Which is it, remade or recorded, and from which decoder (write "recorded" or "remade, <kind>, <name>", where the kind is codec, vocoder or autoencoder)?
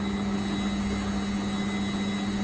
recorded